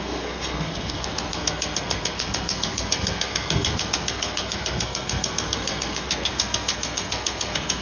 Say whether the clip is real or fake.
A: fake